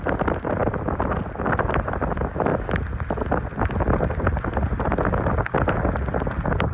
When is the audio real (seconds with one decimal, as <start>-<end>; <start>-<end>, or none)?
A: 0.0-6.7